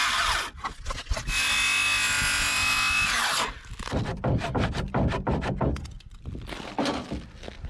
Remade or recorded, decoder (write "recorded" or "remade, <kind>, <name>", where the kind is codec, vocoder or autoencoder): recorded